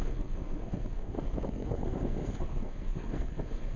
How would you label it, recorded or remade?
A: remade